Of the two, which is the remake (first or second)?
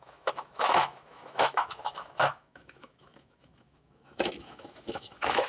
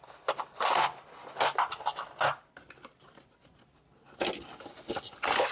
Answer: first